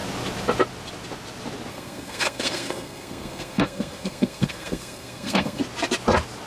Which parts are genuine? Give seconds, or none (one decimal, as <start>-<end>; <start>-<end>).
0.0-1.7; 5.6-6.5